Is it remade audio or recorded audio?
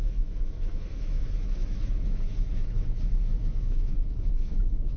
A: remade